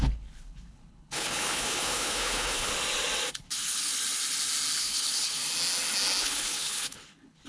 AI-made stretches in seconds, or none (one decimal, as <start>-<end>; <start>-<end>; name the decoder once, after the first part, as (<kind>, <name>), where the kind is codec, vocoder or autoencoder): 0.0-2.7 (codec, HILCodec); 3.3-3.9; 4.8-5.4; 6.2-7.5